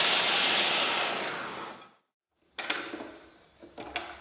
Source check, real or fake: real